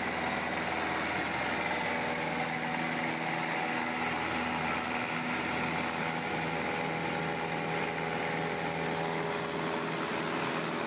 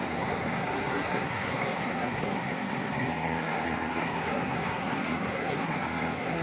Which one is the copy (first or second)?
second